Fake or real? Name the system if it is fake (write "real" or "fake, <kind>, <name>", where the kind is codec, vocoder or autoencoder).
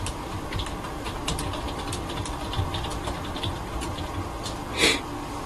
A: real